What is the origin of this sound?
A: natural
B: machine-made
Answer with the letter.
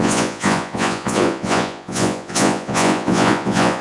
B